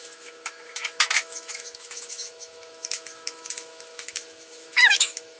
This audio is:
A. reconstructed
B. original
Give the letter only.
A